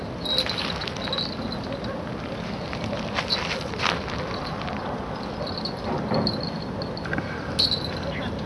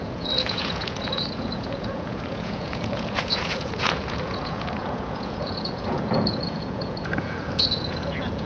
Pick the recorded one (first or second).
first